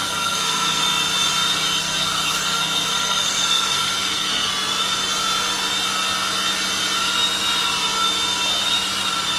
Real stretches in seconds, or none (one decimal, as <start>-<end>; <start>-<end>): 0.8-1.8; 4.5-9.4